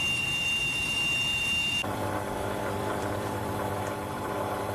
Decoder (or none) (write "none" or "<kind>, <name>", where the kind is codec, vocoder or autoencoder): vocoder, BigVGAN v2